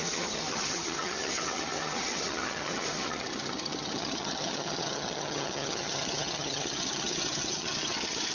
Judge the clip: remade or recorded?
remade